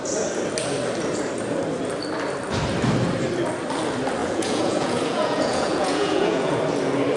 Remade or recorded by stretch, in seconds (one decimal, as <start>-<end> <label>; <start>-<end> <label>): 0.0-4.2 recorded; 4.2-6.6 remade; 6.6-7.2 recorded